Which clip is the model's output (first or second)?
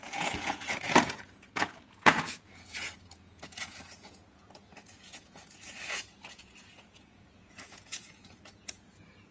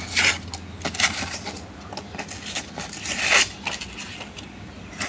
first